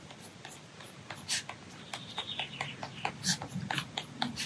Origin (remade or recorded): recorded